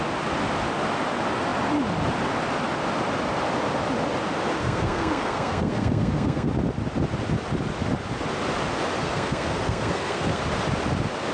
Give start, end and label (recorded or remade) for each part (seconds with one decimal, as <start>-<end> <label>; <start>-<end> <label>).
0.0-4.6 recorded; 4.6-6.5 remade; 6.5-9.0 recorded; 9.0-10.4 remade; 10.4-11.3 recorded